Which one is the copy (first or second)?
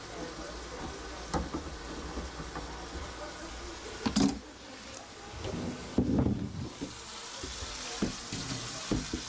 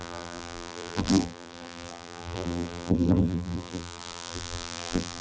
second